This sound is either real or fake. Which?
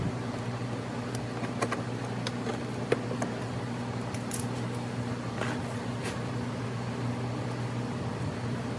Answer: real